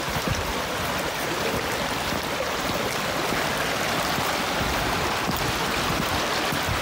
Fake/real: real